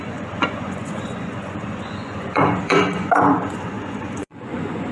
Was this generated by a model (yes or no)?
yes